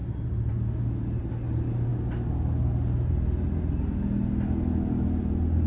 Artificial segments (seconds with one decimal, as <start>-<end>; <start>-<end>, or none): 0.0-0.5